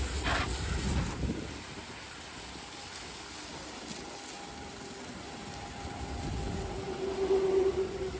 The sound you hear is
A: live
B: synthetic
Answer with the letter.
A